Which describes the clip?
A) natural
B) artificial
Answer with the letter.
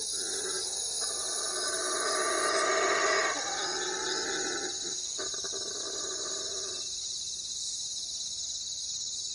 A